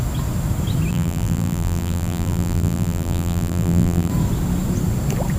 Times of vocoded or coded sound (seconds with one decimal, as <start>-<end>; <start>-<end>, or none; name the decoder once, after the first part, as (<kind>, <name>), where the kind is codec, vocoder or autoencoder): 0.9-4.1 (vocoder, BigVGAN v2)